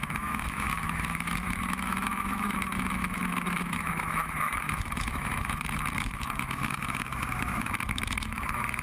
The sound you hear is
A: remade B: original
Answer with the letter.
A